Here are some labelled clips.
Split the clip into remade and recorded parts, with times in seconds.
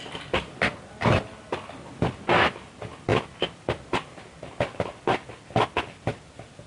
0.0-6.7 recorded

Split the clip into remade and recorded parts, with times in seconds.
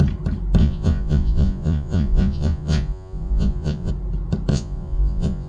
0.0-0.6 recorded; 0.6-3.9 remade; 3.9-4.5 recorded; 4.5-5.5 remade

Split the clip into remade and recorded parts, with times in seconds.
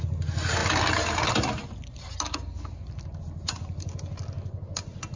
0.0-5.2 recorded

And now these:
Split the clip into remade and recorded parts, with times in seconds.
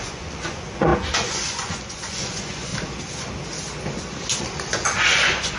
0.0-2.7 remade; 2.7-4.4 recorded; 4.4-5.6 remade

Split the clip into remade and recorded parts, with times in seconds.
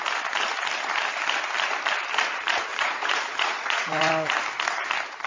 0.0-2.7 recorded; 2.7-4.1 remade; 4.1-5.3 recorded